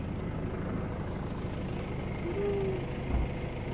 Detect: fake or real real